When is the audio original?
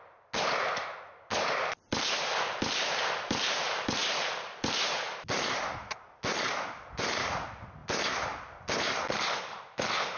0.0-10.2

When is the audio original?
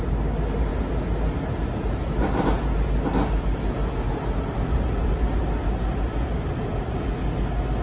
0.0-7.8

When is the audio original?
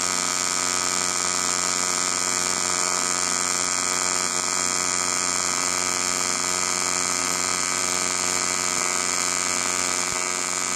0.0-7.2; 7.8-10.8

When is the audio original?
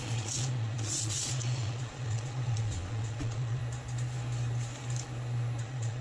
3.6-5.6